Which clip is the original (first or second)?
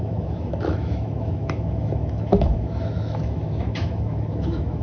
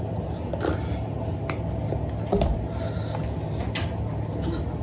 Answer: second